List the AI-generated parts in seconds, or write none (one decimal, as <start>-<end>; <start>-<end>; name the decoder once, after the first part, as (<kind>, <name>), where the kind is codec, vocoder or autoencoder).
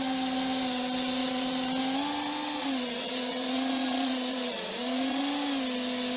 1.2-1.8 (vocoder, Vocos); 2.6-5.2